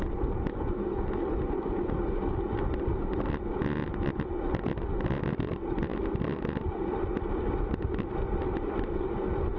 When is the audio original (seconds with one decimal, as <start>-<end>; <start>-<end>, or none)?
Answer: 0.0-9.6